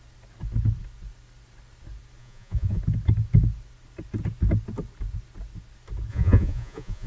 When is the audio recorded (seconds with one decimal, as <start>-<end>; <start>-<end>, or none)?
0.0-2.2; 2.8-6.1